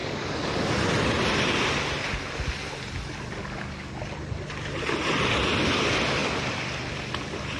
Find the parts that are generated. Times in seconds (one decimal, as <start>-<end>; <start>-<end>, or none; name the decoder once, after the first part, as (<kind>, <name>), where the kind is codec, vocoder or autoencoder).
0.0-0.7 (codec, DAC); 3.4-3.9